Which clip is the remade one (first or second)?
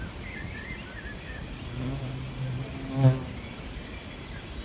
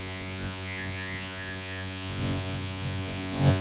second